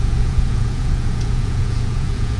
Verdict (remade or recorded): remade